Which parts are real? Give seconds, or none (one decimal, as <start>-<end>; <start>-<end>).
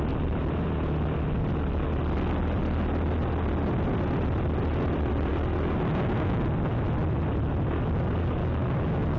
0.0-8.4